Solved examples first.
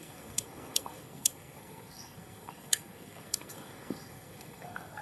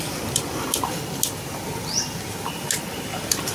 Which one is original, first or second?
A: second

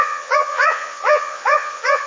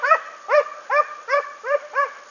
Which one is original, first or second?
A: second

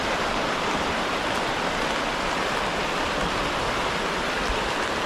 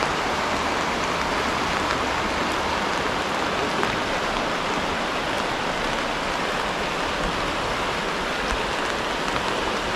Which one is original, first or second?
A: second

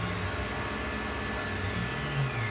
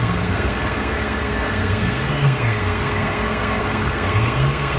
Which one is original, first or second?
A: first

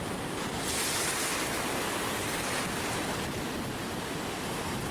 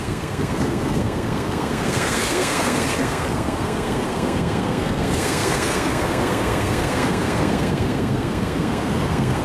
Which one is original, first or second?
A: first